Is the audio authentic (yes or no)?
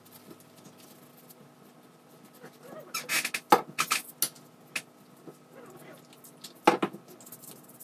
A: yes